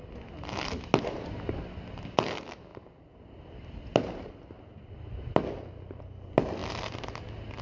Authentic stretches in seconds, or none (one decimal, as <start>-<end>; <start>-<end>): 0.0-7.6